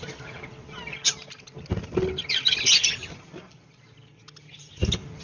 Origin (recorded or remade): recorded